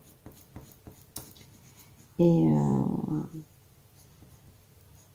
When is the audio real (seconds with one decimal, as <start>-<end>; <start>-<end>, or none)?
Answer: 0.0-5.1